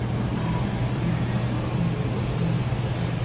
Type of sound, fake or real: real